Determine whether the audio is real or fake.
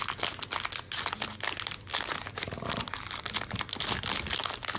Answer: real